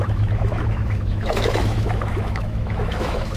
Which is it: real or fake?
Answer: fake